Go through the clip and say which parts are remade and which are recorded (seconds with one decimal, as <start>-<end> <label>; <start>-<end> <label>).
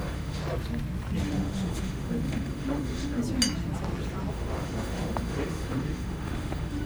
0.0-0.4 remade; 0.4-1.2 recorded; 1.2-3.2 remade; 3.2-4.3 recorded; 4.3-6.9 remade